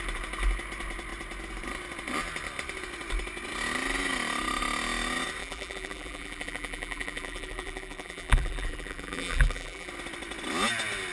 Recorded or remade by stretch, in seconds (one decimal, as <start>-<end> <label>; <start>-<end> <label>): 0.0-5.4 recorded; 5.4-9.9 remade; 9.9-11.1 recorded